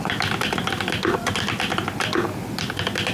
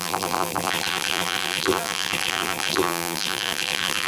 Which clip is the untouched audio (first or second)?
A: first